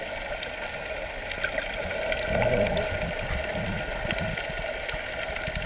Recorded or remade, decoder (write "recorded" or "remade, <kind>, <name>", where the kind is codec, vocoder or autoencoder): recorded